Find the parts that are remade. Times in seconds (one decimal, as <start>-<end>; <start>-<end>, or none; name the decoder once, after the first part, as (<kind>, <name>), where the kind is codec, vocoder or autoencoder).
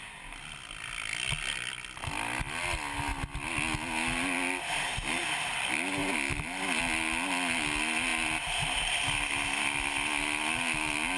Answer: none